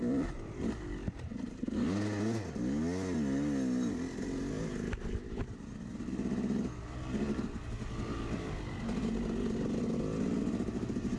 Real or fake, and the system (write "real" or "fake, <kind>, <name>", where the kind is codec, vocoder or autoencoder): real